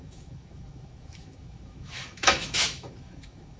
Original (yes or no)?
no